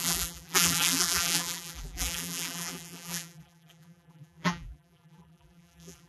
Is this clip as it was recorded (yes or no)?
no